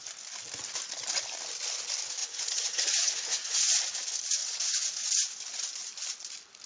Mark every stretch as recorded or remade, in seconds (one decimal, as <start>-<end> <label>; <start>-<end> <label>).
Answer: 0.0-2.2 recorded; 2.2-3.6 remade; 3.6-4.4 recorded; 4.4-5.3 remade; 5.3-6.7 recorded

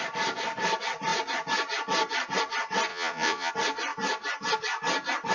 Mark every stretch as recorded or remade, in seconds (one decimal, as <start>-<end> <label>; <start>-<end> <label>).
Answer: 0.0-2.9 recorded; 2.9-3.5 remade; 3.5-5.3 recorded